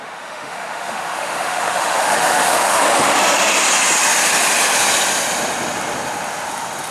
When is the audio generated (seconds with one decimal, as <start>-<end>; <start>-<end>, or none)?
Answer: 0.0-2.8